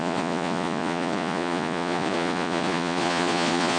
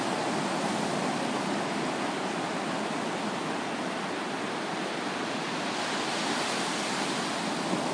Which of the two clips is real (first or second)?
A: second